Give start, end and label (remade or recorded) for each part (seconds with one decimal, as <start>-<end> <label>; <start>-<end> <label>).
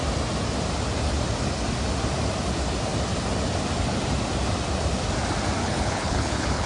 0.0-5.6 recorded; 5.6-6.7 remade